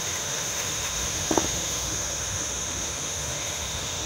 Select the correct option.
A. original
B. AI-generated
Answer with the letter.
B